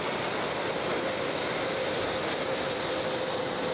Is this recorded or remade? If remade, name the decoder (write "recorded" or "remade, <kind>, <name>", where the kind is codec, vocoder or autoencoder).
remade, vocoder, BigVGAN v2